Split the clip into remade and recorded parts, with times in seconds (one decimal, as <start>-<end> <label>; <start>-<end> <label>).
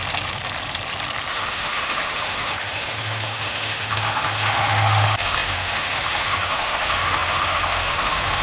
0.0-1.3 recorded; 1.3-8.4 remade